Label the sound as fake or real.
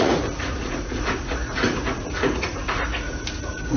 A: fake